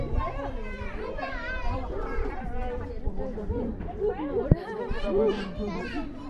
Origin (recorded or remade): remade